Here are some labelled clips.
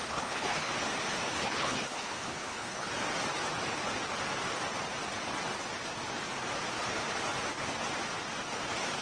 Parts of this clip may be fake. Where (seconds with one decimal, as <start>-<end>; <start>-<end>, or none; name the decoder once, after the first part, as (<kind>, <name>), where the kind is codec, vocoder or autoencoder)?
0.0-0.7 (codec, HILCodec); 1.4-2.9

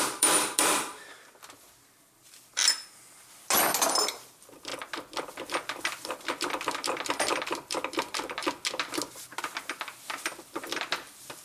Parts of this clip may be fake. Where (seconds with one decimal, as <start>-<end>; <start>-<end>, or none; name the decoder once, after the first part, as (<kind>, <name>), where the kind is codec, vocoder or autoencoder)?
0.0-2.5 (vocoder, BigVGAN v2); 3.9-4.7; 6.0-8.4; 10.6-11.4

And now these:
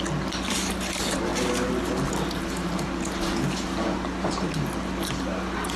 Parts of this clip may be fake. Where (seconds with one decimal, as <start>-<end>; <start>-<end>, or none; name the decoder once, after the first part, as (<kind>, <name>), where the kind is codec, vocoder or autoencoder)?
none

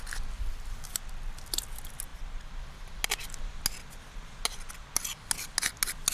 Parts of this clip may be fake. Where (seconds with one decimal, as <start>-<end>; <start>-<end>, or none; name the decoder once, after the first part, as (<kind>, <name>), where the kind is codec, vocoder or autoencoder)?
none

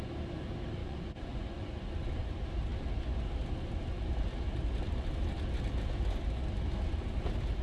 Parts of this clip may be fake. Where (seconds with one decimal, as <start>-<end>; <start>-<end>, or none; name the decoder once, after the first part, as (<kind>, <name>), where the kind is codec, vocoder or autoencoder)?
0.8-1.9 (vocoder, Vocos)